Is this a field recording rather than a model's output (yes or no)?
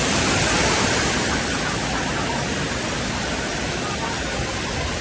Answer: yes